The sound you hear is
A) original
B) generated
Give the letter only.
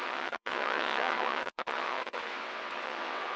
B